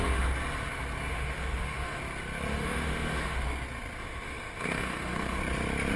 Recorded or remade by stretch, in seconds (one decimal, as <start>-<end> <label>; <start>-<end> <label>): 0.0-1.1 recorded; 1.1-2.0 remade; 2.0-2.5 recorded; 2.5-3.4 remade; 3.4-4.0 recorded; 4.0-5.4 remade; 5.4-6.0 recorded